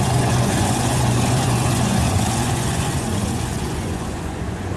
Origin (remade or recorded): remade